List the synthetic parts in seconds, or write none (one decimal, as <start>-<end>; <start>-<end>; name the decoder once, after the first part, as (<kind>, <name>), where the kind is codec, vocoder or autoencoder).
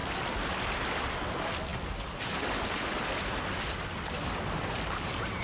none